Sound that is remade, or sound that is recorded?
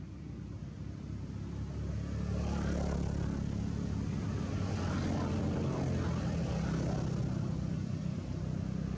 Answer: recorded